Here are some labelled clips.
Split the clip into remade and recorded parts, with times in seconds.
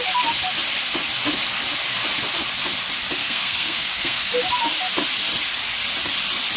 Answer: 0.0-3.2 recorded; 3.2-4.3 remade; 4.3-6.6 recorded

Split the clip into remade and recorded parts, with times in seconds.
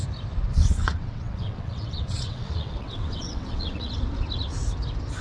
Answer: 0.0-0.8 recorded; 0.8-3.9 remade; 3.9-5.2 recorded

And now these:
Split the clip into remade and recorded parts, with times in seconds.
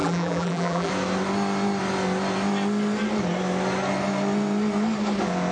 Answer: 0.0-0.9 remade; 0.9-5.5 recorded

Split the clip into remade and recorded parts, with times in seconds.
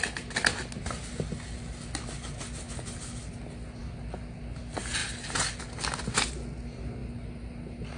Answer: 0.0-8.0 recorded